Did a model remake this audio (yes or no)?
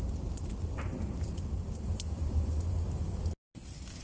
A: no